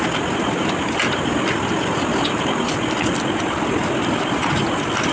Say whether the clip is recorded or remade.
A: recorded